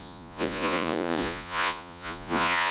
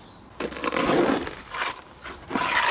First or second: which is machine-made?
first